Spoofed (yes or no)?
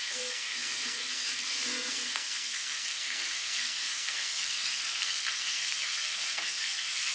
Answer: yes